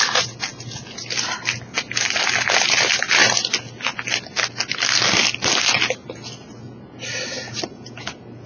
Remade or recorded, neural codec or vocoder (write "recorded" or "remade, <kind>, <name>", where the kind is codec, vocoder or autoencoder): recorded